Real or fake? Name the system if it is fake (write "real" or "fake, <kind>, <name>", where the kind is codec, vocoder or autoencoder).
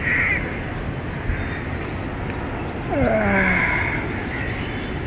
real